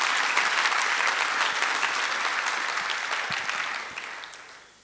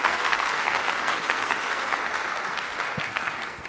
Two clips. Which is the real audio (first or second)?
first